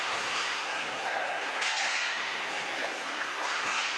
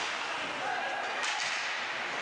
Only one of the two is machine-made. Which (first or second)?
first